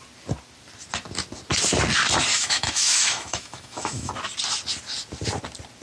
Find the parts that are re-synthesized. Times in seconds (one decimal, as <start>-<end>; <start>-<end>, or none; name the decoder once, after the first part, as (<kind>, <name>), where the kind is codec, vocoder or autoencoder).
2.3-4.1 (autoencoder, DAC-VAE)